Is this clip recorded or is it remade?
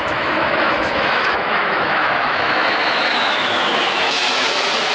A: remade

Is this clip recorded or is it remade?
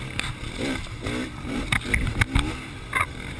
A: recorded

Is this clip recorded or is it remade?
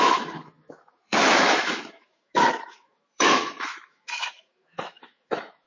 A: remade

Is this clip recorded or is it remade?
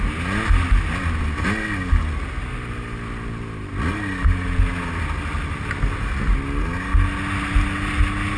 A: recorded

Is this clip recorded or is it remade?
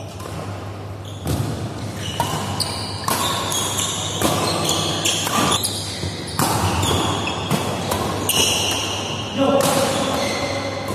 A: recorded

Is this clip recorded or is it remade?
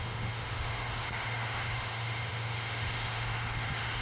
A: remade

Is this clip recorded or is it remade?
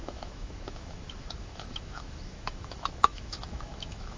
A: remade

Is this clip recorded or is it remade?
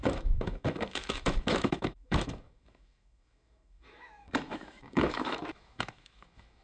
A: remade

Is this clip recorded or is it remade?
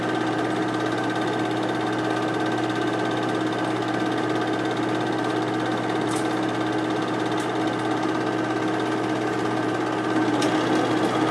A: recorded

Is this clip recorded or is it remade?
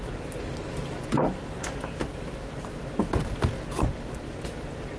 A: recorded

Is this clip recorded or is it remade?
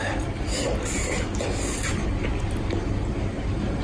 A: recorded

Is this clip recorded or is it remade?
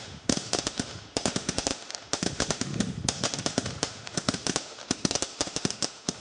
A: remade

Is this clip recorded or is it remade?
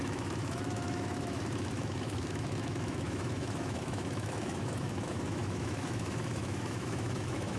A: remade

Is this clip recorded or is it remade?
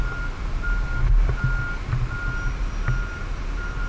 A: recorded